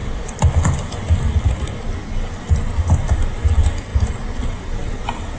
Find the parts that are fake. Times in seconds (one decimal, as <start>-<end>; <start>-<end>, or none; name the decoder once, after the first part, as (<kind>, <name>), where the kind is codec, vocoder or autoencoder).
none